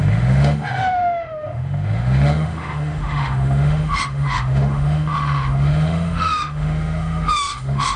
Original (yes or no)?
no